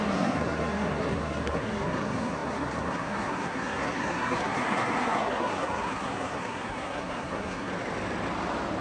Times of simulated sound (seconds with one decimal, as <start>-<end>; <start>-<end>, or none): 0.0-7.7

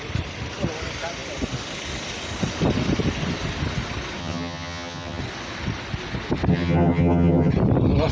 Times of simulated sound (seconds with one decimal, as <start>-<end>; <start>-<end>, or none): 4.2-5.2; 6.5-7.5

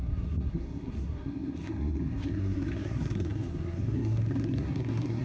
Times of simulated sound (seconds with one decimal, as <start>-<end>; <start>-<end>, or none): 0.0-5.2

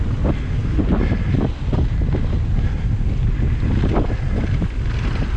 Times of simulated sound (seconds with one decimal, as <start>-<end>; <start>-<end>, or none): none

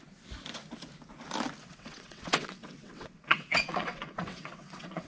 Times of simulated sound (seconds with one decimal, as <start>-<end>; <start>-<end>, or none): 1.6-5.1

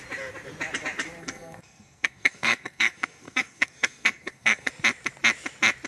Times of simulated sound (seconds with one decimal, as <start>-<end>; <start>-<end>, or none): 1.2-4.7